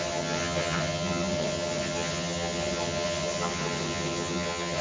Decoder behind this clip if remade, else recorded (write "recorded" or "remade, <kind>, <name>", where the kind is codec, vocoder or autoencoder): remade, vocoder, HiFi-GAN